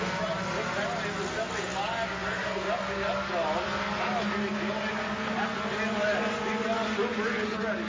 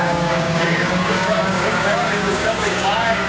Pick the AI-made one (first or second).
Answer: second